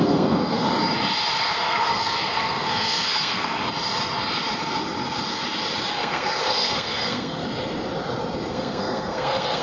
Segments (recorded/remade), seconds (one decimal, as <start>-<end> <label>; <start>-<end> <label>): 0.0-0.6 remade; 0.6-1.4 recorded; 1.4-3.6 remade; 3.6-5.9 recorded; 5.9-7.4 remade; 7.4-8.5 recorded; 8.5-9.6 remade